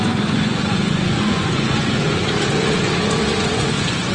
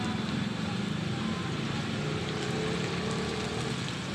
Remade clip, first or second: first